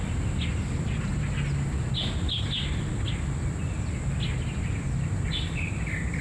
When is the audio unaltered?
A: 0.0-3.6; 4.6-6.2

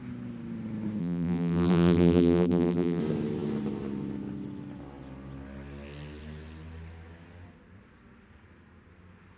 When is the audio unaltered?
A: 0.0-1.0; 3.0-9.4

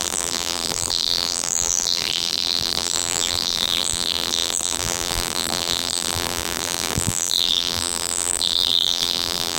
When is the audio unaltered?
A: none